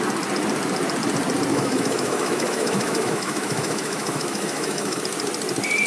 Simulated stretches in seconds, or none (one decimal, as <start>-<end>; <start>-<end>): 1.5-5.0